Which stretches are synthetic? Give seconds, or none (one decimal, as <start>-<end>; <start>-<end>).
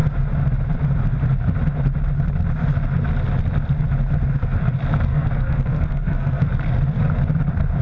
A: 5.1-6.5